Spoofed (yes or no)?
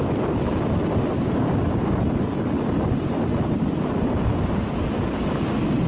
no